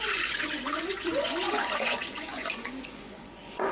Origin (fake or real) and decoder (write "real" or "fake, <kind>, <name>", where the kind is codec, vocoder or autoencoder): fake, vocoder, Vocos